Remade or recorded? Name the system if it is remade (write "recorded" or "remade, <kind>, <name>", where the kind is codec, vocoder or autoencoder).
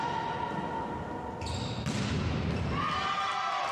recorded